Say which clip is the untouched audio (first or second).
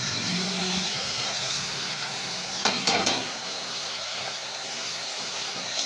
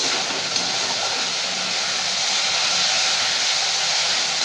second